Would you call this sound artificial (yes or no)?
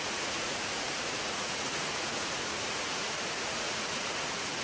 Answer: yes